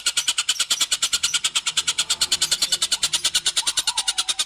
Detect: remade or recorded recorded